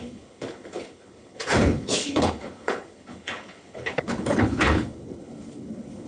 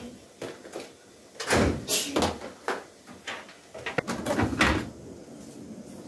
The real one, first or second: second